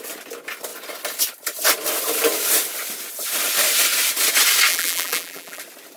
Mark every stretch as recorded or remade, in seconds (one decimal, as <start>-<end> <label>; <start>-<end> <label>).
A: 0.0-4.7 recorded; 4.7-5.6 remade; 5.6-6.0 recorded